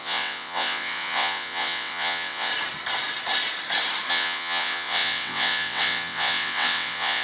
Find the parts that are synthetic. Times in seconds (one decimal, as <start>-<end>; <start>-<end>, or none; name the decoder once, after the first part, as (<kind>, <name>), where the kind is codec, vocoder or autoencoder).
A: 0.0-2.5 (vocoder, WaveNeXt); 4.1-7.2